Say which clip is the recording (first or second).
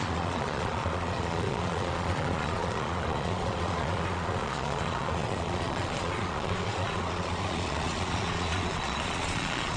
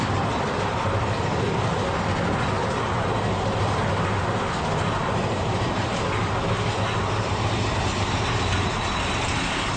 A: second